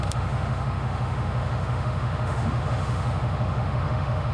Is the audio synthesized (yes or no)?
yes